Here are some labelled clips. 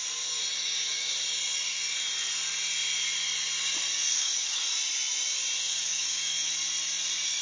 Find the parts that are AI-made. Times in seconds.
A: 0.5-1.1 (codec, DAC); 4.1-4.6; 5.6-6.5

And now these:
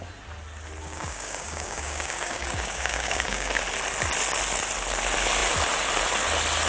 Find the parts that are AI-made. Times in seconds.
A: 0.8-3.6 (codec, DAC)

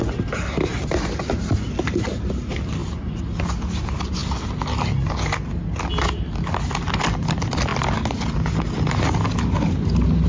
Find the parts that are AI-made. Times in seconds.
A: none

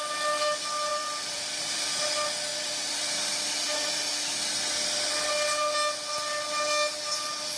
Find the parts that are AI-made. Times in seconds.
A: 0.9-1.8 (vocoder, BigVGAN v2)

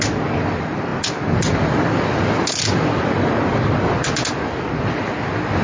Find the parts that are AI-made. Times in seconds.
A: none

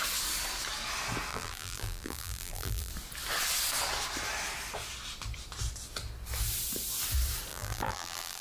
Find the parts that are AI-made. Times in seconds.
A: 1.3-2.9 (vocoder, BigVGAN v2); 7.5-8.4